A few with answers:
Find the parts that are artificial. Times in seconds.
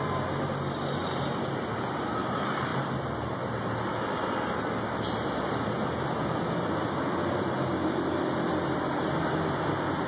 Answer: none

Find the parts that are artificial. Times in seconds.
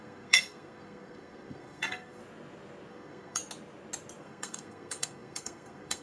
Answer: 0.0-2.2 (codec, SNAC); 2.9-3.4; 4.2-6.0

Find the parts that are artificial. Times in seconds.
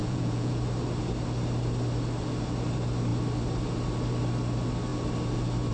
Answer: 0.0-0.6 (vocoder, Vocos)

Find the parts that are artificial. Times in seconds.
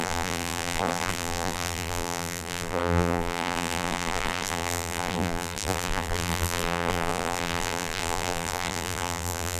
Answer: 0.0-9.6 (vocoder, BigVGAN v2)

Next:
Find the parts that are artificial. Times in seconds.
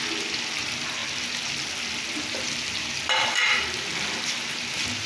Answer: none